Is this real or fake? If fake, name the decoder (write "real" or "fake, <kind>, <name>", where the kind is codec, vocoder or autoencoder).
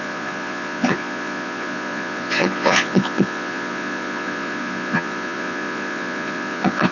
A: fake, vocoder, Vocos